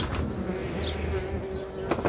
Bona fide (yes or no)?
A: yes